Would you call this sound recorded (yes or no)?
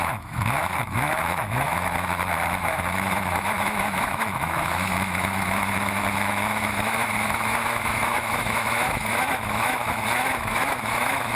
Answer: no